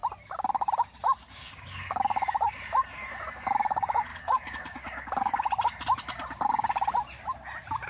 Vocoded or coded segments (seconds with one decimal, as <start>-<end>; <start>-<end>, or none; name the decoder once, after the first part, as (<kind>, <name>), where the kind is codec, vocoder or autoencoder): 1.2-2.0 (codec, DAC); 4.1-5.3